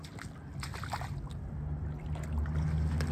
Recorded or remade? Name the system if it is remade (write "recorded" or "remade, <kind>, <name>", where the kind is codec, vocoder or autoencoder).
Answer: recorded